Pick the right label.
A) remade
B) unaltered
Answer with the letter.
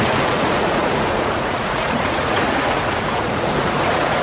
A